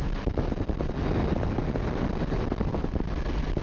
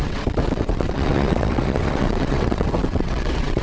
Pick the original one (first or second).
first